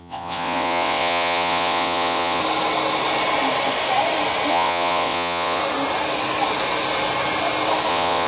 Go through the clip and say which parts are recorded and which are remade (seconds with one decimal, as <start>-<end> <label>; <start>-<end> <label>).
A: 0.0-2.4 remade; 2.4-4.5 recorded; 4.5-5.6 remade; 5.6-7.9 recorded; 7.9-8.3 remade